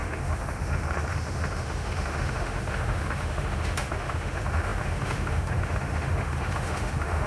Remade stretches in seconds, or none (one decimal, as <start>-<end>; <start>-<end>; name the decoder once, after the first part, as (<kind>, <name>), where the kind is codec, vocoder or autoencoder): 0.0-7.3 (autoencoder, DAC-VAE)